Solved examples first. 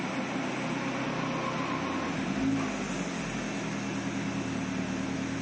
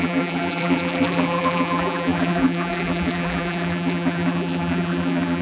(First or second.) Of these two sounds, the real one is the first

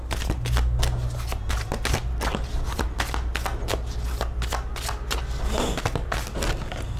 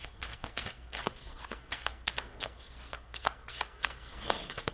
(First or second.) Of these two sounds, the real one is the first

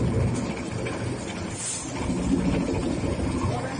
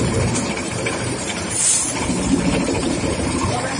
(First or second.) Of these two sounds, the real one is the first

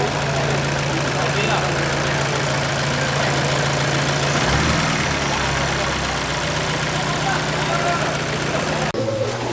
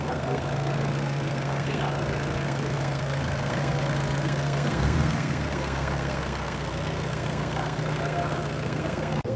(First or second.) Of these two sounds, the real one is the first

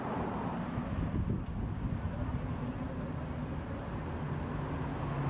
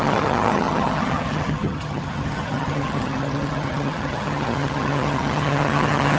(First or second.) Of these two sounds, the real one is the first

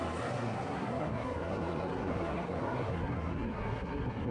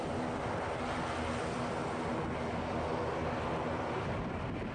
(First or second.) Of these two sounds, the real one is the second